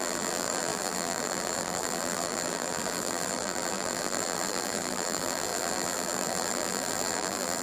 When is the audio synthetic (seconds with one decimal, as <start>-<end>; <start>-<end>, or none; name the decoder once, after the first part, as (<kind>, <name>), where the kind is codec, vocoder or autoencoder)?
0.0-7.6 (vocoder, BigVGAN v2)